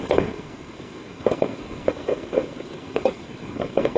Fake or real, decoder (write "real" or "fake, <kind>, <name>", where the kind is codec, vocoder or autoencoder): fake, codec, SNAC